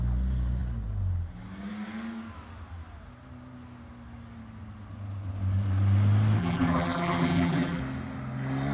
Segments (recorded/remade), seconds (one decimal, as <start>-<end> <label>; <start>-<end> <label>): 0.0-6.4 recorded; 6.4-7.8 remade; 7.8-8.7 recorded